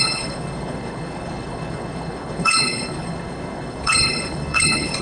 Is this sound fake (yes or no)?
yes